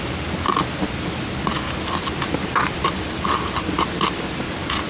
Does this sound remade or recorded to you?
recorded